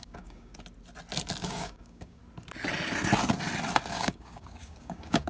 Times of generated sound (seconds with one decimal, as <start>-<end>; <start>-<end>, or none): 0.0-0.5; 1.4-2.2; 3.9-5.3